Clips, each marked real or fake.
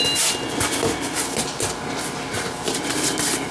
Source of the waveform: real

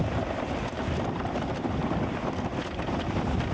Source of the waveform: fake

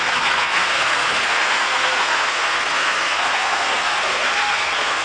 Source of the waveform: fake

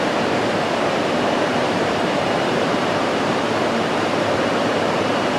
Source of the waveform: fake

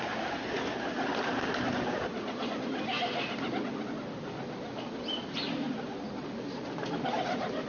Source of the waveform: real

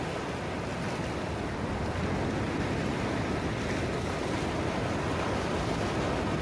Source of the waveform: real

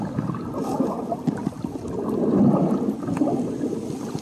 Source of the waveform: real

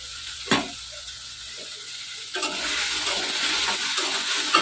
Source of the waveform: fake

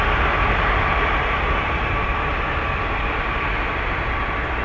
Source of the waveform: real